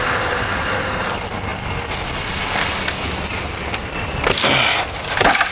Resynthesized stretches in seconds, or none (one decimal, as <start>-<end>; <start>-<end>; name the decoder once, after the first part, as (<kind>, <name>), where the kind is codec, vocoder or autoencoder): none